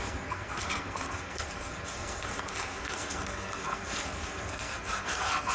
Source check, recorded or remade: remade